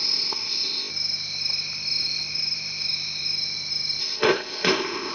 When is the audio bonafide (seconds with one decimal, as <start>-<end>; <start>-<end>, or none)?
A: 0.9-4.0